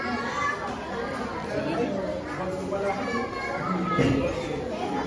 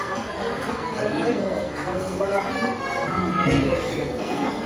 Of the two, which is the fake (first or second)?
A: second